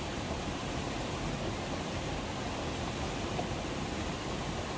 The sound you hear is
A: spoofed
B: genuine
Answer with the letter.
B